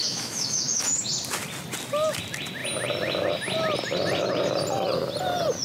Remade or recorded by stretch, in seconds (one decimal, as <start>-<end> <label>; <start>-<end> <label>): 0.0-1.1 remade; 1.1-5.6 recorded